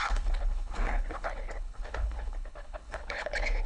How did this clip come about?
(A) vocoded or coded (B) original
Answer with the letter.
A